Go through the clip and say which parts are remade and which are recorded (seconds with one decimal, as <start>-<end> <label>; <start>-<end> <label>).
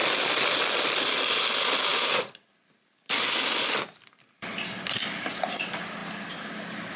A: 0.0-1.9 recorded; 1.9-3.2 remade; 3.2-6.0 recorded; 6.0-7.0 remade